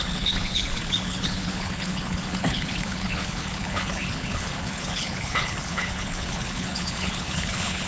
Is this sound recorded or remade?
remade